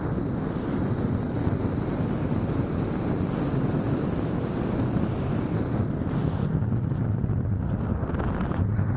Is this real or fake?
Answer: real